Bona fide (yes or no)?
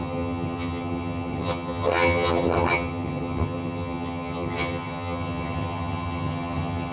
no